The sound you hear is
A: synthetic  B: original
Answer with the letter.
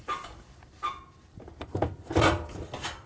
A